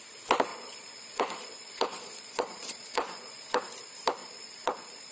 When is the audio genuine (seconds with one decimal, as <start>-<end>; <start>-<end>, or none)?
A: 0.0-0.5; 3.6-4.2